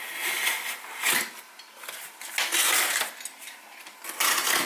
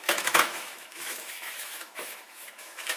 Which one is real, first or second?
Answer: first